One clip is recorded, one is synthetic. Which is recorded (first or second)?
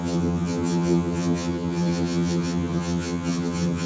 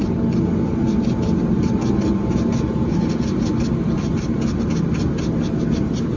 second